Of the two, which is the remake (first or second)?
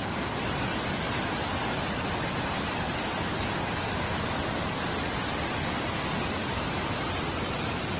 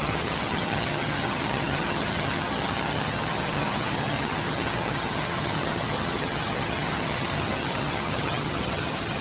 second